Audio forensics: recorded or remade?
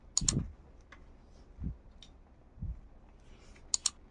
recorded